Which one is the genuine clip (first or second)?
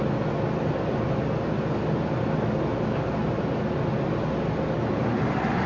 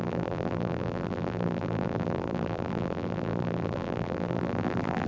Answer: first